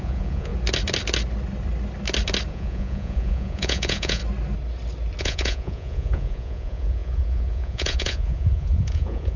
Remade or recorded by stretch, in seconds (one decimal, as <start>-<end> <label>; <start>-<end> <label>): 0.0-0.5 remade; 0.5-2.5 recorded; 2.5-4.2 remade; 4.2-5.2 recorded; 5.2-9.4 remade